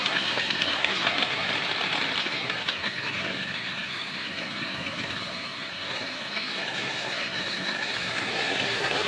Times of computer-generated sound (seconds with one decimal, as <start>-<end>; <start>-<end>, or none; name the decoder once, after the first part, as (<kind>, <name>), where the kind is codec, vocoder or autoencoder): 0.0-1.5 (codec, SNAC); 2.2-9.1